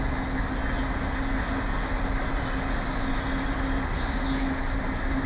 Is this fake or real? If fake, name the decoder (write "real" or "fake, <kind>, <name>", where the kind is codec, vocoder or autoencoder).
real